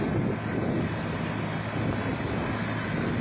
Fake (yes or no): no